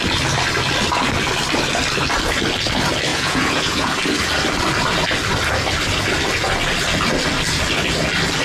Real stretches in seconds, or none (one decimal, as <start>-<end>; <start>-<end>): 0.0-3.1; 3.9-8.4